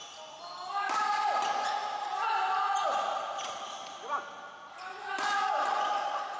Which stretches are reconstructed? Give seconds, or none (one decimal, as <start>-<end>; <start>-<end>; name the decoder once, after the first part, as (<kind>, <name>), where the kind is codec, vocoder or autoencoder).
none